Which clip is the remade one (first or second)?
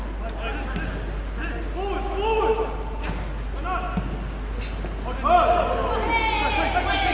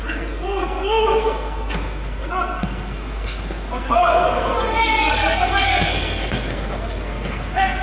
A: second